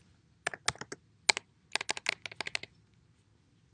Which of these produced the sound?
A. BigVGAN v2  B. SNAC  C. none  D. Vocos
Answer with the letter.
C